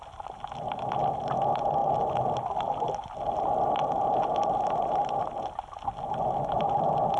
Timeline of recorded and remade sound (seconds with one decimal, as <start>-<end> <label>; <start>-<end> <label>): 0.0-7.2 recorded